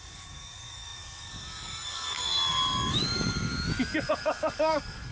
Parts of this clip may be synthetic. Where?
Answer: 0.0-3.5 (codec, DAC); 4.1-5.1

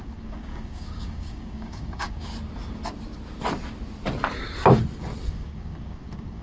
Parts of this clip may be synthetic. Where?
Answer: 0.0-2.3 (codec, DAC); 5.3-6.4